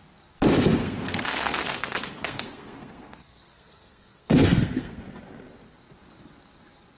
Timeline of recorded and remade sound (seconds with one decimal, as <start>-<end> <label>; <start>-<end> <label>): 0.0-0.8 recorded; 0.8-5.0 remade; 5.0-7.0 recorded